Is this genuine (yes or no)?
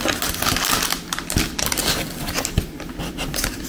yes